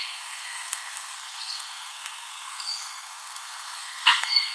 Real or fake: fake